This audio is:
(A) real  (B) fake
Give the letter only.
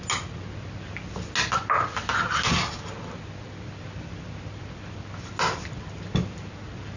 A